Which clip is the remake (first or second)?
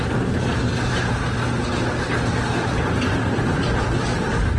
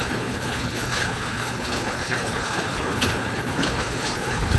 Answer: second